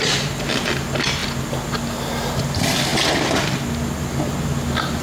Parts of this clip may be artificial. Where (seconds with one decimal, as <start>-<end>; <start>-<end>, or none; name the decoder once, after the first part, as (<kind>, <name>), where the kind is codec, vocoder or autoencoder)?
none